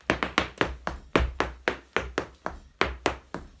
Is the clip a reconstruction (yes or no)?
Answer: no